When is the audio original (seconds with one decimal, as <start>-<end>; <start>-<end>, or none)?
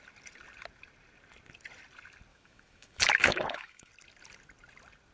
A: 0.0-2.3; 3.9-5.1